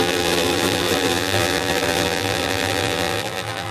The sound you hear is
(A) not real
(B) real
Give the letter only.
A